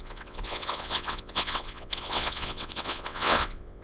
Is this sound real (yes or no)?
no